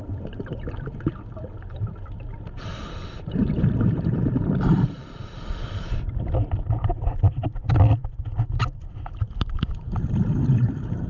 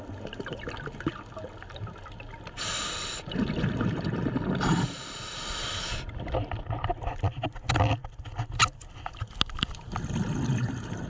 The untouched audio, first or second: second